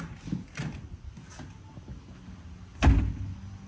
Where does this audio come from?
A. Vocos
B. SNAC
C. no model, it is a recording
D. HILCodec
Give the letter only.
C